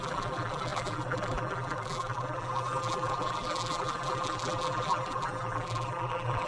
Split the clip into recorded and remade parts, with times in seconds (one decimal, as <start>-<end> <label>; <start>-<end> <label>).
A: 0.0-6.5 remade